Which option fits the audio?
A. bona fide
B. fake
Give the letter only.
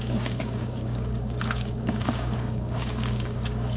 B